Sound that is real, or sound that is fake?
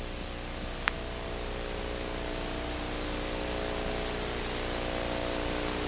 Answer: real